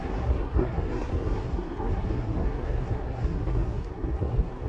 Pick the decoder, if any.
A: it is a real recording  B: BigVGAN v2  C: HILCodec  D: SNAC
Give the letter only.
D